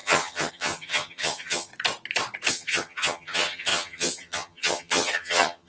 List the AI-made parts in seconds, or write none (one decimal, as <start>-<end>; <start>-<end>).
0.0-1.7; 2.5-5.7